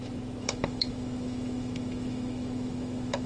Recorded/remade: remade